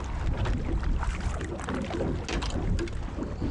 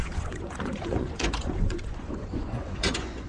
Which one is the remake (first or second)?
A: second